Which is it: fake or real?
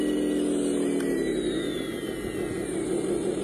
real